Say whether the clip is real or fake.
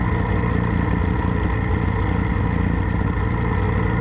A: real